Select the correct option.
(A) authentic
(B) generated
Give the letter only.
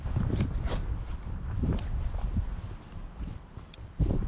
B